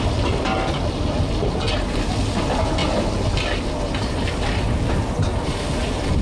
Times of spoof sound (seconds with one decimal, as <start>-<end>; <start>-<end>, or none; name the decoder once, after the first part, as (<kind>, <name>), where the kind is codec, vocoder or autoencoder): none